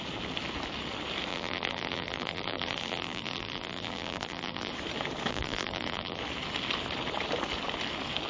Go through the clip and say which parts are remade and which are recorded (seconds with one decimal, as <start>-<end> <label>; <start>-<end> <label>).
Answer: 0.0-1.3 recorded; 1.3-4.7 remade; 4.7-5.3 recorded; 5.3-6.2 remade; 6.2-8.3 recorded